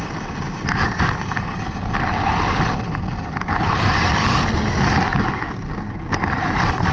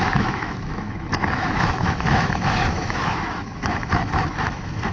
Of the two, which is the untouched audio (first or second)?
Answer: first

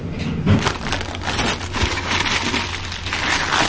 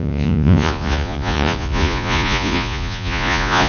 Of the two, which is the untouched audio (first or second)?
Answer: first